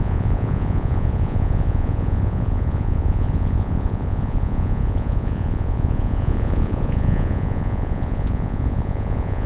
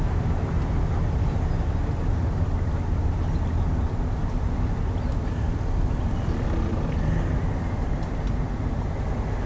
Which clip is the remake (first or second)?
first